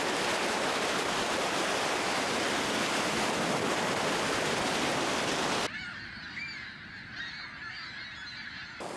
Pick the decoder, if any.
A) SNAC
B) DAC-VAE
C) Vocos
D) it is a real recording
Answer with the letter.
D